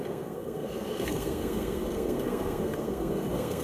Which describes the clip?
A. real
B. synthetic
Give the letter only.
B